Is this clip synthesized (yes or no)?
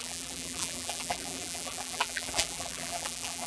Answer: yes